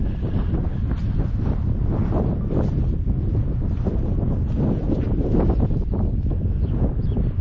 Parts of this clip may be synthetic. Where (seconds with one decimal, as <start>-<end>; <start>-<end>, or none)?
none